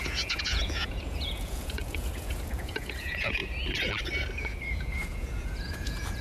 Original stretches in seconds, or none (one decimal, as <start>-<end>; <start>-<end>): 3.4-4.4